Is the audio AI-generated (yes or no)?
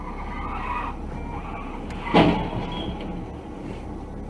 no